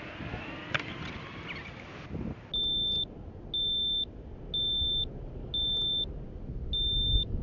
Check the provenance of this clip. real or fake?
real